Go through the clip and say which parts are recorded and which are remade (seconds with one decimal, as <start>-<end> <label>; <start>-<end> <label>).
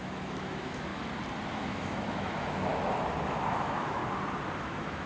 0.0-0.9 remade; 0.9-1.5 recorded; 1.5-2.7 remade; 2.7-3.3 recorded; 3.3-4.0 remade; 4.0-4.6 recorded; 4.6-5.1 remade